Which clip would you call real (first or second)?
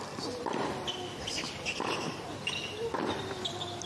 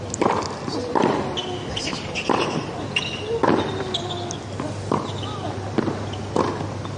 second